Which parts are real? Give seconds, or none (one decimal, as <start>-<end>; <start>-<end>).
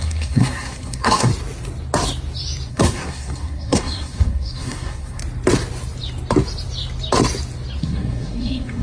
1.3-2.7; 5.2-7.8